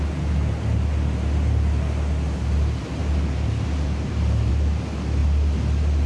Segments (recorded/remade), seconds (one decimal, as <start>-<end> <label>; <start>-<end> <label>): 0.0-6.1 recorded